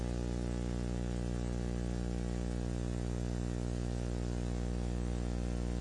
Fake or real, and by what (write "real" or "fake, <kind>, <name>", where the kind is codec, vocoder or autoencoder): real